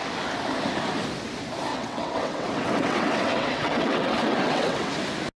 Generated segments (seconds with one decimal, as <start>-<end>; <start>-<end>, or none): 1.7-4.9